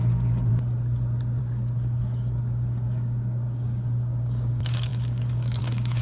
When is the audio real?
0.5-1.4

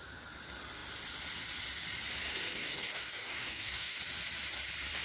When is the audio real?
0.0-2.5; 4.0-5.0